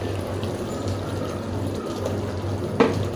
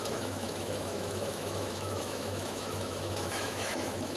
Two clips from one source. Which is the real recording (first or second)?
first